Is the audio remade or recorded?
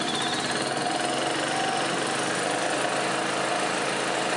recorded